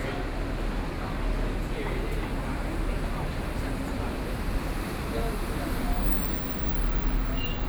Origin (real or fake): real